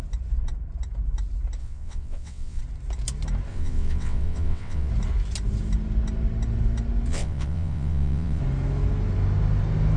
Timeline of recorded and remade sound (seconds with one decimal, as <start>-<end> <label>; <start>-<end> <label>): 0.0-1.6 recorded; 1.6-2.6 remade; 2.6-3.5 recorded; 3.5-4.9 remade; 4.9-7.1 recorded; 7.1-8.4 remade; 8.4-10.0 recorded